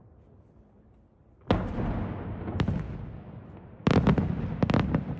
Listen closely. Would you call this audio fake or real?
real